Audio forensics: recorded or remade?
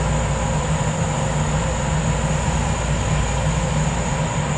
recorded